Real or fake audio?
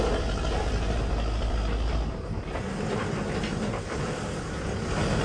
real